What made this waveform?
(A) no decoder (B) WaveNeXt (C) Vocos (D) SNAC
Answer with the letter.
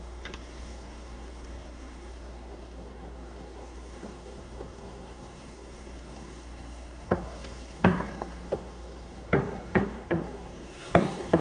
D